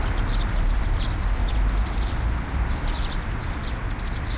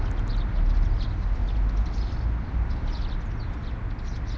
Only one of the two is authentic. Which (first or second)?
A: second